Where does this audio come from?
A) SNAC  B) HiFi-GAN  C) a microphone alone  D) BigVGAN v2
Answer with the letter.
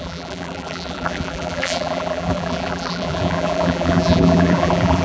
D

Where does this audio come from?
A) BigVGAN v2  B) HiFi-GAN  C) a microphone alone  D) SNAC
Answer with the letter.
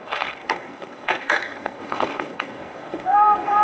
D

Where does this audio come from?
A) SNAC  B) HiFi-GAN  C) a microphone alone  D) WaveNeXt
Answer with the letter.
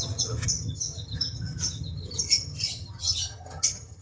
B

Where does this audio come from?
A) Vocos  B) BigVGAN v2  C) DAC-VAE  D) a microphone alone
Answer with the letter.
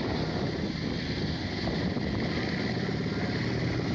D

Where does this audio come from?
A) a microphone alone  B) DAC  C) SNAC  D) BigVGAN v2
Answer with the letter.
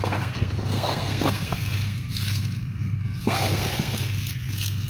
C